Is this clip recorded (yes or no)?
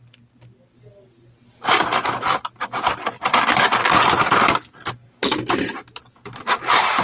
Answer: yes